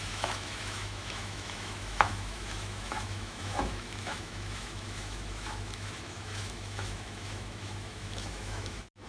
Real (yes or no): no